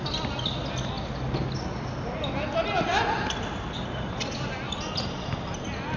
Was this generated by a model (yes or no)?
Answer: no